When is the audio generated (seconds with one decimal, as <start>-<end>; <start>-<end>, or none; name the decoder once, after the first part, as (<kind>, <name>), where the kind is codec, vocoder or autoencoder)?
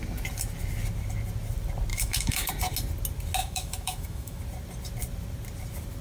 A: 1.9-2.5 (autoencoder, DAC-VAE); 3.4-4.4